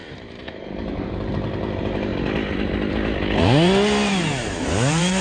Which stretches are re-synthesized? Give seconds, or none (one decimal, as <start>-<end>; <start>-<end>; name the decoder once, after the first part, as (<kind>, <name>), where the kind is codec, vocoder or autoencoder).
0.0-2.1 (vocoder, BigVGAN v2); 3.4-5.2